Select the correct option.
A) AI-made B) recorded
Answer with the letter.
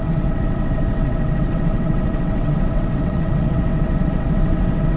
A